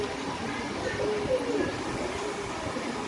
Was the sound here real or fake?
real